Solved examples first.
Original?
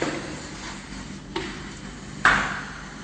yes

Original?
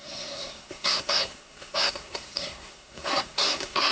no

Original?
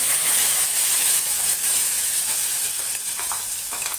no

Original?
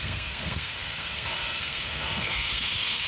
no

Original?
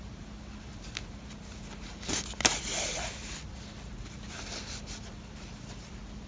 yes